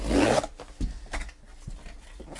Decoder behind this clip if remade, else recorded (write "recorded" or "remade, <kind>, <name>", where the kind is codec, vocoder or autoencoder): recorded